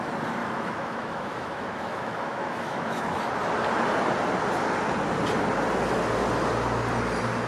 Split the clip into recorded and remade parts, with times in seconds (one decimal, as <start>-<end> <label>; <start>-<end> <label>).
0.0-0.4 recorded; 0.4-3.2 remade; 3.2-7.5 recorded